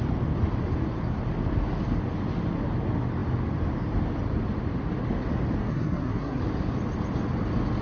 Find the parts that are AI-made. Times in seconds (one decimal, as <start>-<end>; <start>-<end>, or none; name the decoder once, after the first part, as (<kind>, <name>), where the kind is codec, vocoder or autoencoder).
5.6-6.4 (codec, SNAC)